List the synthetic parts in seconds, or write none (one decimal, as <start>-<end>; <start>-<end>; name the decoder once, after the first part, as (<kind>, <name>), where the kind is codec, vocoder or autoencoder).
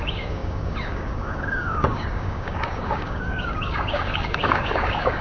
0.0-5.2 (codec, DAC)